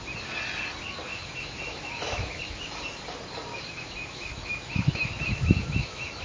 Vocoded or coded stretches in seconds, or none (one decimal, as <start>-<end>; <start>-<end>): 1.1-2.4; 3.5-6.2